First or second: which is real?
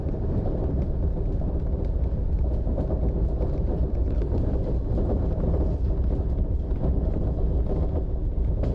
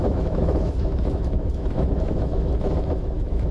first